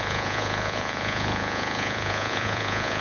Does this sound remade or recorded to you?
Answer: remade